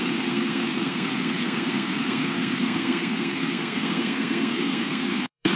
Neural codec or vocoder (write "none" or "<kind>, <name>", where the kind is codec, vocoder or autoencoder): codec, SNAC